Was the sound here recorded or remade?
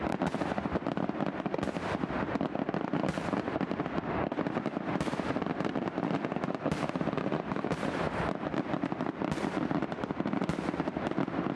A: remade